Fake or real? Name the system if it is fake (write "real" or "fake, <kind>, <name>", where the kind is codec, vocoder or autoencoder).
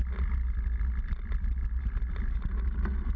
real